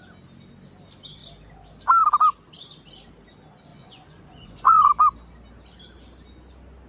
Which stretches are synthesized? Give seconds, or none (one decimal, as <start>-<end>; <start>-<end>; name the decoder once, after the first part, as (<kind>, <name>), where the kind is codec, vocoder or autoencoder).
3.7-4.9 (vocoder, Vocos)